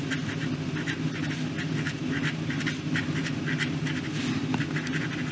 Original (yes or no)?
yes